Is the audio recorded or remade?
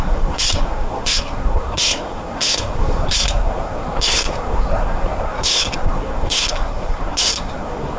remade